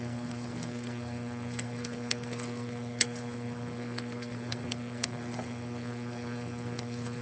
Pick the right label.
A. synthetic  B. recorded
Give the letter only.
A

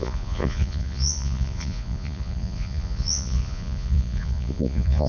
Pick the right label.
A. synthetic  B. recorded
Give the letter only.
A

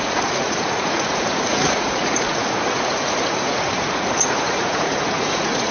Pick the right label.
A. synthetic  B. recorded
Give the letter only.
A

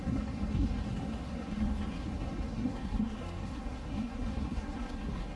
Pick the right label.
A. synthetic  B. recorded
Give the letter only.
A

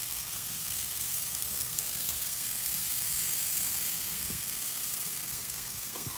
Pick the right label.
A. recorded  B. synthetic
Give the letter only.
B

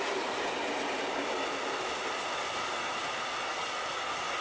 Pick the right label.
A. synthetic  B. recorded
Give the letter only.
B